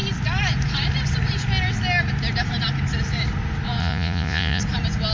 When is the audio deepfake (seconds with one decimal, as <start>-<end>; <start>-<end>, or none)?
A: 3.8-4.6

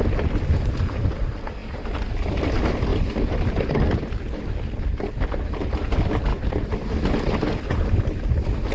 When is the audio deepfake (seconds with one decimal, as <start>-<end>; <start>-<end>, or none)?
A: 0.0-2.9; 5.3-8.7

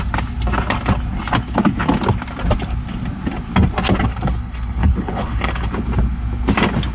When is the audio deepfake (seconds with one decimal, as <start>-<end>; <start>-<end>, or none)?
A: 4.1-5.7

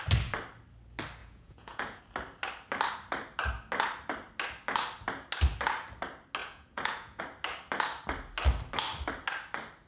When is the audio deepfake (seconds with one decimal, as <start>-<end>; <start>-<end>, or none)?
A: 1.2-2.0; 6.4-7.2

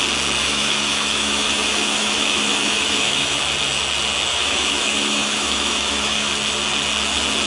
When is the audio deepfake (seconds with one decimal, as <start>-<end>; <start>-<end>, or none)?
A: 0.4-3.4; 4.3-6.3